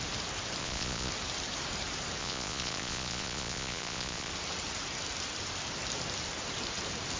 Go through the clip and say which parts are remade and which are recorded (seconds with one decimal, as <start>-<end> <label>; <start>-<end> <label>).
0.0-0.6 recorded; 0.6-1.1 remade; 1.1-2.2 recorded; 2.2-4.3 remade; 4.3-7.2 recorded